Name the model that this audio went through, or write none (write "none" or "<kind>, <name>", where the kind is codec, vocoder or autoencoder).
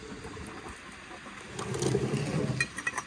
none